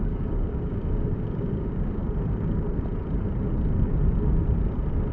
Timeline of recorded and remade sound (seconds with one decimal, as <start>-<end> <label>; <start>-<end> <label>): 0.0-2.0 remade; 2.0-5.1 recorded